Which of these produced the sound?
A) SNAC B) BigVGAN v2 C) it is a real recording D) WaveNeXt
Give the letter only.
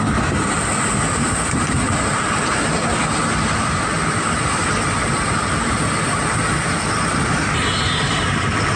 C